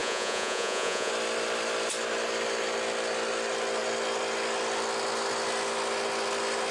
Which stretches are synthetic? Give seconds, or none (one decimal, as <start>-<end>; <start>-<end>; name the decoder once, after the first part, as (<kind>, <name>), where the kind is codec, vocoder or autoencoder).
0.0-1.1 (vocoder, Vocos)